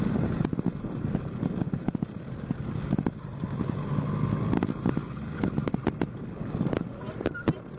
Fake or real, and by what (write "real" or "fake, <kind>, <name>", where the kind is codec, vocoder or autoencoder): real